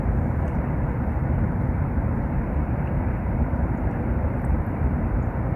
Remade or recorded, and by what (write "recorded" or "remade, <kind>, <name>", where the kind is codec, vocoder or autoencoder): remade, vocoder, BigVGAN v2